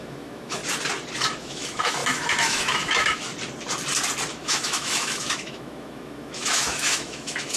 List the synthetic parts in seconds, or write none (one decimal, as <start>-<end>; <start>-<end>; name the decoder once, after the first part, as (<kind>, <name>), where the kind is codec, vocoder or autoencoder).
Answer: 0.0-0.6 (autoencoder, DAC-VAE); 1.4-3.3; 4.3-7.6